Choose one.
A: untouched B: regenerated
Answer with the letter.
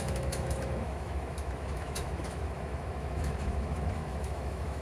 B